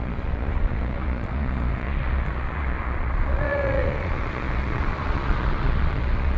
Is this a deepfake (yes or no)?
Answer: yes